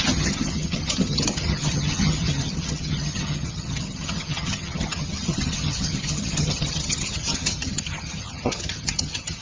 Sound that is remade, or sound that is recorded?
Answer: remade